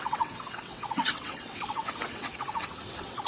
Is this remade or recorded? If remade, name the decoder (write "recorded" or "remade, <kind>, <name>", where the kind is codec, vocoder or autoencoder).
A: remade, vocoder, WaveNeXt